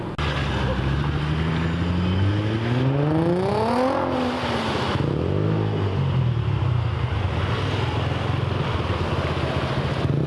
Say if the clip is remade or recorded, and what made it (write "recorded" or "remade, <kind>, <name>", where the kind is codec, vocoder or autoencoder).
recorded